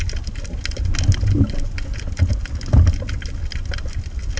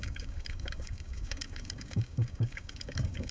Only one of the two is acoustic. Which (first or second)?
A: first